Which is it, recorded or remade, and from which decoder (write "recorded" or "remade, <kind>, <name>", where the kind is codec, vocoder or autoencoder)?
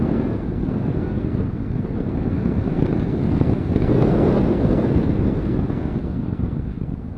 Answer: remade, codec, SNAC